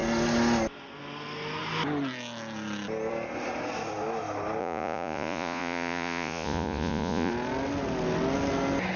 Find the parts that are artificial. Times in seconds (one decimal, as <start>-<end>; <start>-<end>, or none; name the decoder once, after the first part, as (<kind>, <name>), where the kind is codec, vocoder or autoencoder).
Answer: 4.6-7.3 (vocoder, Vocos)